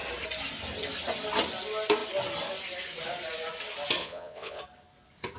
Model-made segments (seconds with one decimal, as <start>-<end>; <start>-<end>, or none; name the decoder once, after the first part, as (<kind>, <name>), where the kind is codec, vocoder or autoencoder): 4.0-4.6 (vocoder, Vocos)